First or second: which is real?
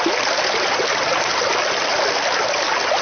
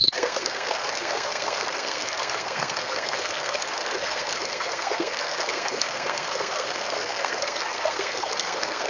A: first